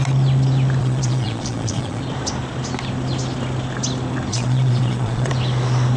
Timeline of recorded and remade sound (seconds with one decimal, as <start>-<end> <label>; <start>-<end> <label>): 0.0-0.8 recorded; 0.8-2.0 remade; 2.0-4.3 recorded; 4.3-5.3 remade; 5.3-6.0 recorded